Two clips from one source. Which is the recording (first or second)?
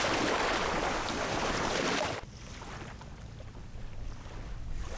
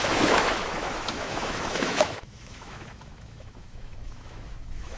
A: first